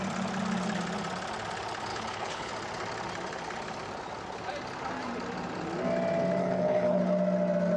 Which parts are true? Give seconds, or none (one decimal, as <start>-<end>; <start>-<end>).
0.0-1.9; 2.5-6.4; 7.0-7.8